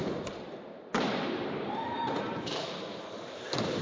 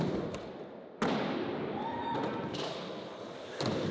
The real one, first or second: second